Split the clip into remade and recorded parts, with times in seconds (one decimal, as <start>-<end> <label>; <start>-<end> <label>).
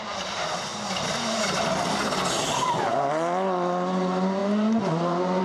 0.0-5.4 recorded